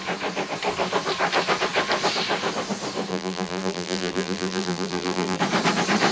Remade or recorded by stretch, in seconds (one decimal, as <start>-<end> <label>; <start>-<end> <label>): 0.0-3.1 recorded; 3.1-5.4 remade; 5.4-6.1 recorded